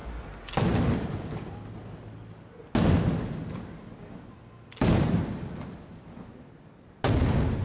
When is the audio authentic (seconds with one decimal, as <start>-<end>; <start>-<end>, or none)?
0.0-7.6